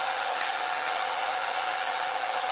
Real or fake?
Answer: fake